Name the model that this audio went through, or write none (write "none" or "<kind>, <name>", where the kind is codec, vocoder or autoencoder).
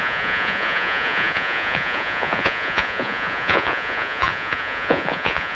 vocoder, Vocos